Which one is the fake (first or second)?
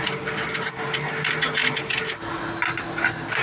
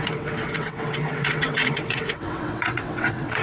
second